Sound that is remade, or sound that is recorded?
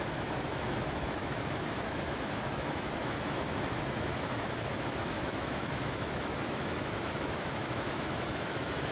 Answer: remade